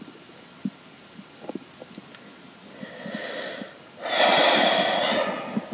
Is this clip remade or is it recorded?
recorded